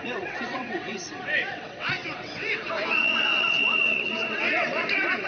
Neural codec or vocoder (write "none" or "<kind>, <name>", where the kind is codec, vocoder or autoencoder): vocoder, WaveNeXt